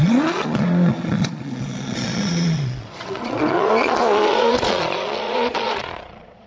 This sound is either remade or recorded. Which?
remade